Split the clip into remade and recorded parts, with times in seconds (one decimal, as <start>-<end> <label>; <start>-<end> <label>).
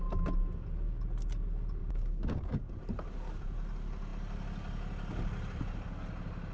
0.0-1.8 recorded; 1.8-2.7 remade; 2.7-6.5 recorded